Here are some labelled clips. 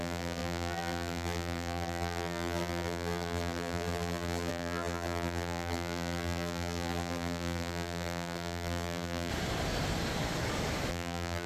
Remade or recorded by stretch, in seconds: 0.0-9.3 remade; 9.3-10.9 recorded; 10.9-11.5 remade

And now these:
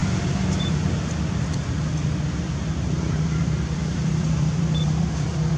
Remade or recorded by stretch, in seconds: 0.0-5.6 remade

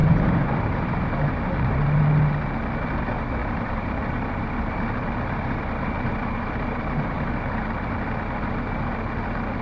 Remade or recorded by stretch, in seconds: 0.0-1.7 remade; 1.7-3.4 recorded; 3.4-7.3 remade; 7.3-9.6 recorded